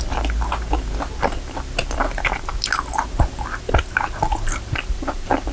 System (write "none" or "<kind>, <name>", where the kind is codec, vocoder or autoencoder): none